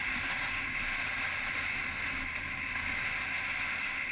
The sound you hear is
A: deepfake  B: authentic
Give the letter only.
B